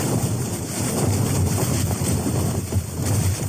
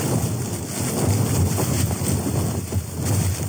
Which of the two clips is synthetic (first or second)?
first